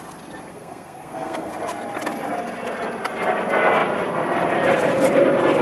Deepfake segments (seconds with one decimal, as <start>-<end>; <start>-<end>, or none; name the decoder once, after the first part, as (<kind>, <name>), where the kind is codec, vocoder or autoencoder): 0.5-1.5 (codec, SNAC)